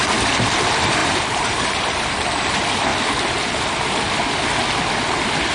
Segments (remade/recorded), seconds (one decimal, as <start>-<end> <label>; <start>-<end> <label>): 0.0-1.0 recorded; 1.0-2.5 remade; 2.5-5.5 recorded